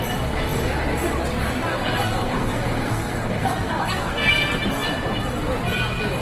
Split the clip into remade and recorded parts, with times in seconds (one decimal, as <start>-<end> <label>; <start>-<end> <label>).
0.0-1.7 recorded; 1.7-4.3 remade; 4.3-6.2 recorded